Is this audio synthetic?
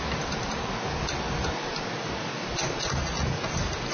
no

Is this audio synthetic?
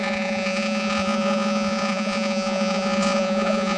yes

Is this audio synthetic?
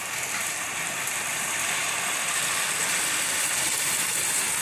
no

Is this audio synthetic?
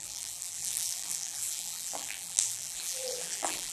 yes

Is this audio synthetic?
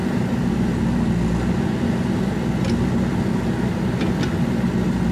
no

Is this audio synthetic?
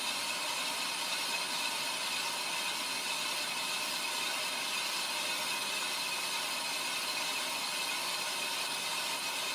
no